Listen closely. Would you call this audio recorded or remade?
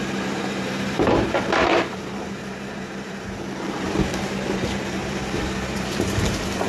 remade